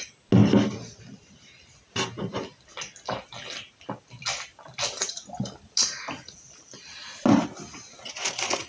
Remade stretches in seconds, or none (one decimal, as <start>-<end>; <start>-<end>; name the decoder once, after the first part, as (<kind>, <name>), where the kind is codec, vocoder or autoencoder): none